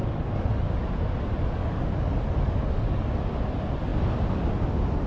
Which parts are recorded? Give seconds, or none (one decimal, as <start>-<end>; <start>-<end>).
0.6-1.6; 3.2-5.1